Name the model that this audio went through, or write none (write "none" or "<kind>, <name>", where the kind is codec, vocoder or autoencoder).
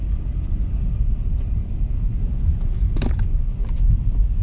none